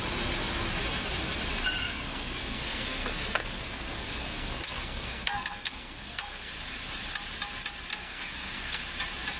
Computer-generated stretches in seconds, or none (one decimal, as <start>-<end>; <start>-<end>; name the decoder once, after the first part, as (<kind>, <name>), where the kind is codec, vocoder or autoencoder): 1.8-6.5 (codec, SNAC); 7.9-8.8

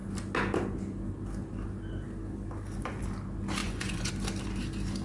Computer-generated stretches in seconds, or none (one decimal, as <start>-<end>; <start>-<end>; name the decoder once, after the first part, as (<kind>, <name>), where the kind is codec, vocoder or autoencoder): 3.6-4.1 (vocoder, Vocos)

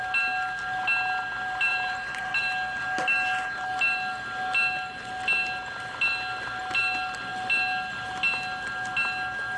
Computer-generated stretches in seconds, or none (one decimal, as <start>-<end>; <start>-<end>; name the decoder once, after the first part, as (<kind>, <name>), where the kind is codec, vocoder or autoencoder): 1.7-2.3 (vocoder, BigVGAN v2)

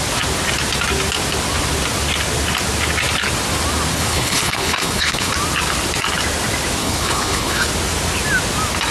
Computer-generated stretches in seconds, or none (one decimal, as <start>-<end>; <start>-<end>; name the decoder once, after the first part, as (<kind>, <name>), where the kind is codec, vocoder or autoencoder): 3.9-5.3 (codec, HILCodec); 6.8-7.7